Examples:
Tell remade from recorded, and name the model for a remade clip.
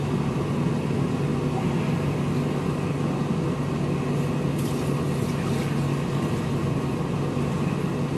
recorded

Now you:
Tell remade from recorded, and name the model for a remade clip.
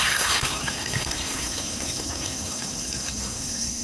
remade, codec, SNAC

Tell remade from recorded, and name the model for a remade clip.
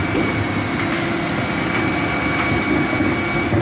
recorded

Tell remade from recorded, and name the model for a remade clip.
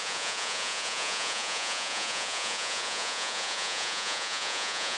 remade, vocoder, Vocos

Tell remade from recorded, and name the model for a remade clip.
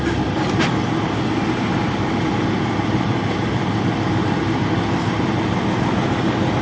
recorded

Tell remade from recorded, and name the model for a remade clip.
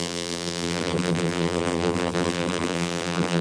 remade, vocoder, BigVGAN v2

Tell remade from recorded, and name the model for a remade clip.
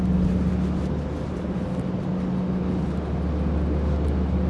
recorded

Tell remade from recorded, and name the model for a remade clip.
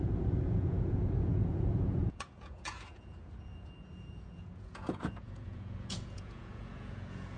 remade, vocoder, Vocos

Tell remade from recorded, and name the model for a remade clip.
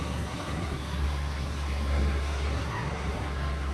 remade, codec, SNAC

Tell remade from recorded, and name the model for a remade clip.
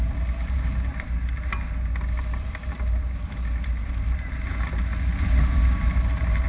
recorded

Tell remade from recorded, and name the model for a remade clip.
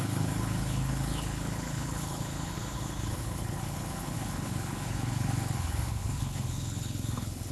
remade, codec, HILCodec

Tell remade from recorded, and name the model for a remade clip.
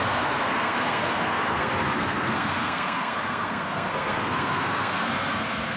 remade, codec, SNAC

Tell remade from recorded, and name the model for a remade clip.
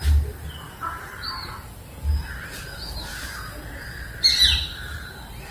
recorded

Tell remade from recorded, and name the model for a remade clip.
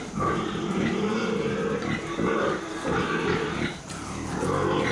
recorded